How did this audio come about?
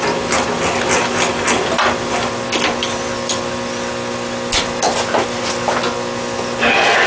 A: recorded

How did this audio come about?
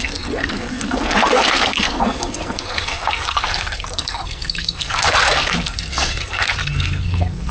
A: remade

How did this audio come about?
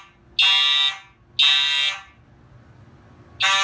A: recorded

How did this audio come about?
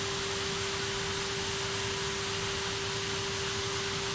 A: recorded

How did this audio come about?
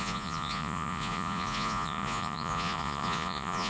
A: remade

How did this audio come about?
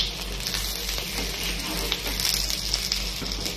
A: recorded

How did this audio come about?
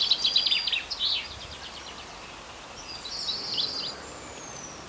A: recorded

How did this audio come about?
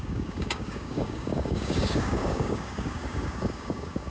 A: remade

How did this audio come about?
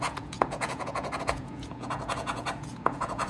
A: remade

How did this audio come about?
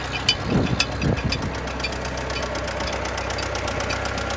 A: recorded